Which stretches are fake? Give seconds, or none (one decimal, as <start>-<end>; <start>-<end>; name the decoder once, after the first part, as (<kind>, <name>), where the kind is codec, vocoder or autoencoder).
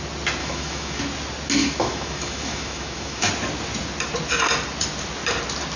0.4-1.0 (autoencoder, DAC-VAE); 1.6-3.3